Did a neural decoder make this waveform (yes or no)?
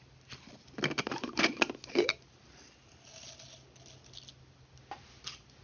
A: no